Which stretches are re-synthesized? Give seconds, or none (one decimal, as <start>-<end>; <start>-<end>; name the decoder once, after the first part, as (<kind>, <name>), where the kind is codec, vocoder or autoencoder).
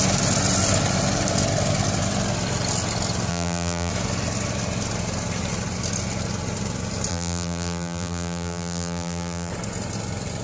3.3-3.9 (vocoder, BigVGAN v2); 7.1-9.5